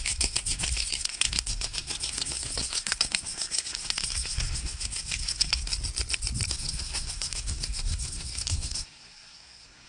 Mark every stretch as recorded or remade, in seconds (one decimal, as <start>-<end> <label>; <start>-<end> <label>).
0.0-5.7 remade; 5.7-6.5 recorded; 6.5-9.9 remade